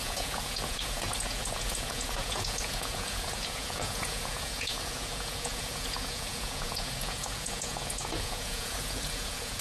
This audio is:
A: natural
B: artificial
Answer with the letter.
B